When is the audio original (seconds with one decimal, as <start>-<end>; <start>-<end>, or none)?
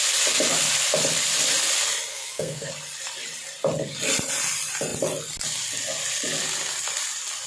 0.0-2.1; 2.7-7.5